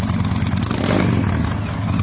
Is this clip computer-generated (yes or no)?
no